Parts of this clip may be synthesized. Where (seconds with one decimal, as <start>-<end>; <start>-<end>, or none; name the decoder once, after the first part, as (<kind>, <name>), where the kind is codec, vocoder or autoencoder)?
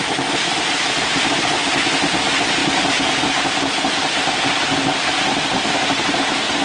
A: none